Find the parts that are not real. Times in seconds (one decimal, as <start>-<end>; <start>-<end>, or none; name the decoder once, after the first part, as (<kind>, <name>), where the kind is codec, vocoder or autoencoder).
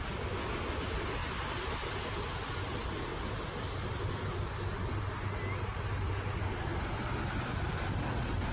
none